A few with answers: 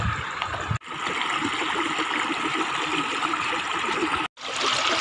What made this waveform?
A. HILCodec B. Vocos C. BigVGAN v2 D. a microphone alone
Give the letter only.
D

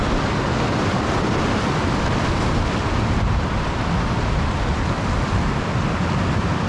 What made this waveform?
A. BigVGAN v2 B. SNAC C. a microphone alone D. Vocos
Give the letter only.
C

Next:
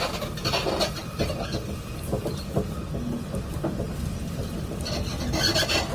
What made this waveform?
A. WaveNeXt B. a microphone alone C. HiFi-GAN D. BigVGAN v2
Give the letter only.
B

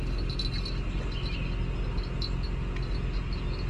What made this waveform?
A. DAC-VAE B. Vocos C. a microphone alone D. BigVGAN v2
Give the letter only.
C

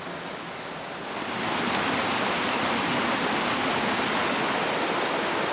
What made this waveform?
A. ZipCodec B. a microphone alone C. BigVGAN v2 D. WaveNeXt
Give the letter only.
B